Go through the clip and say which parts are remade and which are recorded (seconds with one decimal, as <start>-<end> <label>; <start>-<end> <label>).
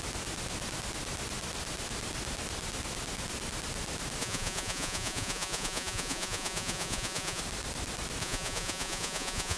0.0-4.2 recorded; 4.2-7.4 remade; 7.4-8.2 recorded; 8.2-9.6 remade